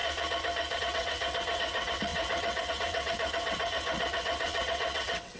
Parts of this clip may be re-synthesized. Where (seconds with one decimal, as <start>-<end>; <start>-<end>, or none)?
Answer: 0.8-5.4